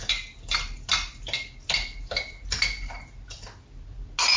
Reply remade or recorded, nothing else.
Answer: recorded